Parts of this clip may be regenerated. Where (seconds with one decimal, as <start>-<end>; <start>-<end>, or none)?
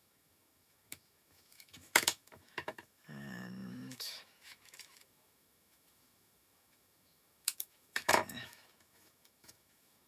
0.0-10.1